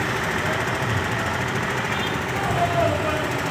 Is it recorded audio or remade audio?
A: recorded